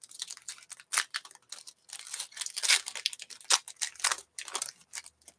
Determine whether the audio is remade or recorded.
recorded